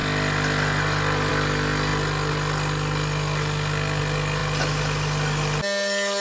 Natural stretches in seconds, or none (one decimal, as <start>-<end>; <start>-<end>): 0.0-6.2

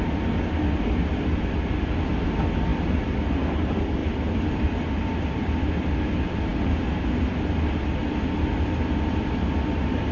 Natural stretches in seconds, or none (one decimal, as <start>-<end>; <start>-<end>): 0.0-10.1

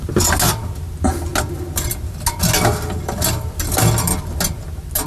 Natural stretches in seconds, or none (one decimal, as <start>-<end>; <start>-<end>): 0.0-5.1

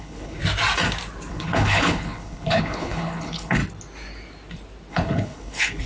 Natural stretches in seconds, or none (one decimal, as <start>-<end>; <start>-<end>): 0.4-1.3; 3.6-4.9

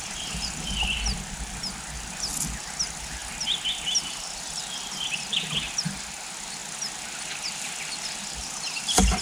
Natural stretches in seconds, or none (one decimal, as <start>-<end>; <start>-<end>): 0.0-9.2

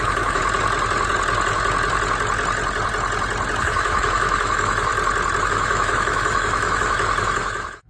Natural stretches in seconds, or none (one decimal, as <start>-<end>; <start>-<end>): 0.4-3.6; 4.9-5.4

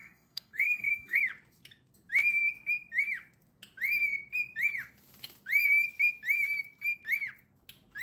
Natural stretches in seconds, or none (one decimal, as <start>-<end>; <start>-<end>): 1.2-8.0